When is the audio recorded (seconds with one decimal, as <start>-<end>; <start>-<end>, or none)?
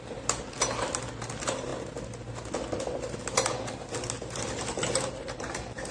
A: 0.0-5.9